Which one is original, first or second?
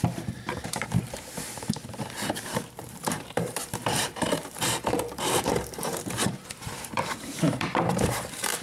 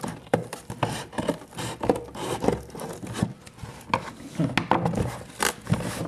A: second